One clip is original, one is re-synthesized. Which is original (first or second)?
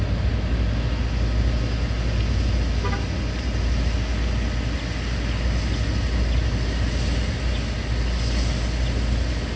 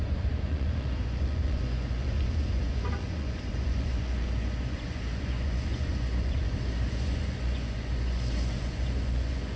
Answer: first